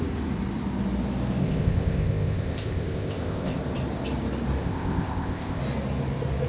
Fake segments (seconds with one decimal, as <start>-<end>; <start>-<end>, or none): 1.4-3.6; 4.6-5.6